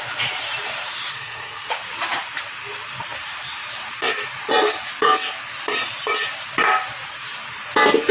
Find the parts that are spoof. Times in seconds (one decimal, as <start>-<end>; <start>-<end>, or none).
1.1-1.7

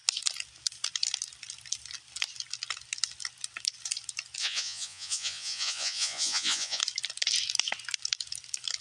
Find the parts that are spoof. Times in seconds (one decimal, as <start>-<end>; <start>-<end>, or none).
4.4-6.8

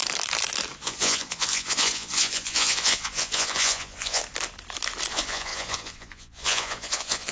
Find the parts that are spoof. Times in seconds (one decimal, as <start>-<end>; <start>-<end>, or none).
0.8-4.2; 5.1-7.3

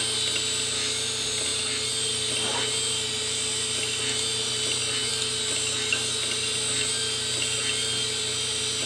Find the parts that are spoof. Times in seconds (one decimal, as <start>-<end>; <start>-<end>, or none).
none

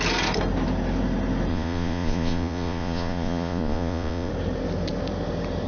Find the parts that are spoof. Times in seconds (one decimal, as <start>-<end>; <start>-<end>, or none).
1.5-4.3

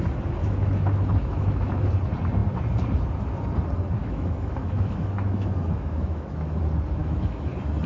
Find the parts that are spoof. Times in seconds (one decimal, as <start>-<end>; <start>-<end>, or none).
0.4-1.9; 4.0-6.6; 7.0-7.5

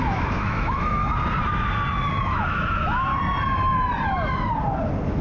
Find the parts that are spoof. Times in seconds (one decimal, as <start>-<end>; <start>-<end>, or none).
0.0-1.0; 2.1-3.1